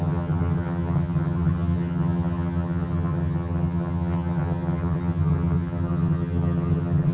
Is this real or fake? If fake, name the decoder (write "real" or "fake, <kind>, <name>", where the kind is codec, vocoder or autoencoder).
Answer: fake, vocoder, HiFi-GAN